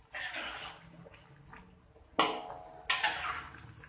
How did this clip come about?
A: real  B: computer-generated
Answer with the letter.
A